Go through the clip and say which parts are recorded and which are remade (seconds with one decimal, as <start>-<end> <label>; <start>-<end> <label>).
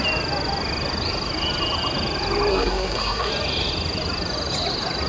0.0-2.5 recorded; 2.5-3.3 remade; 3.3-5.1 recorded